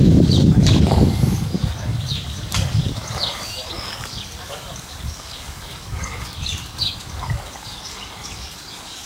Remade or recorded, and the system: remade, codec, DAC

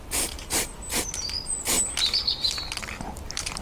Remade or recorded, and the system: recorded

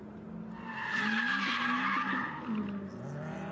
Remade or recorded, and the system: recorded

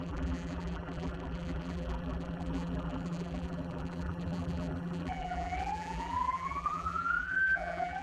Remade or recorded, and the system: remade, vocoder, BigVGAN v2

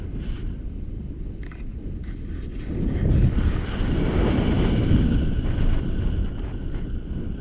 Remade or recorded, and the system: recorded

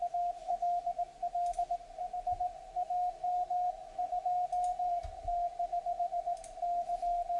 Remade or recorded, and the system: recorded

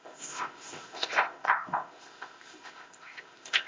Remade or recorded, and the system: remade, codec, ZipCodec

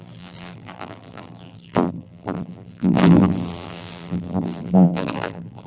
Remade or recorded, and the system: remade, vocoder, BigVGAN v2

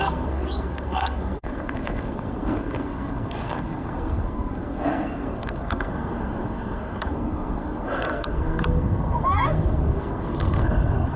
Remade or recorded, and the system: remade, codec, SNAC